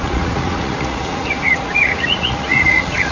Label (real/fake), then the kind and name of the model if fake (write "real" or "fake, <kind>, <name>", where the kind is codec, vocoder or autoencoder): fake, vocoder, Vocos